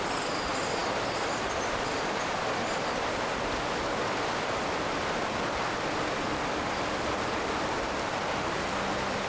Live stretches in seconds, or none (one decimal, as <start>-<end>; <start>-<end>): 0.0-9.3